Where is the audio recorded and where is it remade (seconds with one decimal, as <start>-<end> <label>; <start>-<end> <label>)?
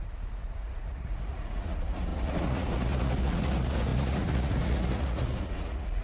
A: 0.0-6.0 remade